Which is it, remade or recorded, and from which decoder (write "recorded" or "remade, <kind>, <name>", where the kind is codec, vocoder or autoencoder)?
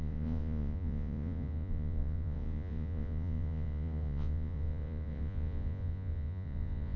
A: remade, vocoder, Vocos